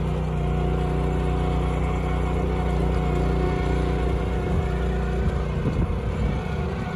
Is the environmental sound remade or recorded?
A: recorded